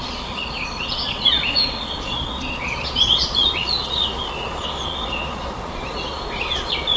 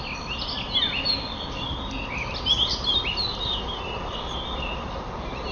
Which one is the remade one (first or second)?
first